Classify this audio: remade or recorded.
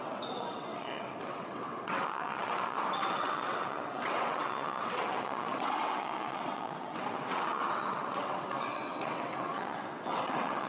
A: remade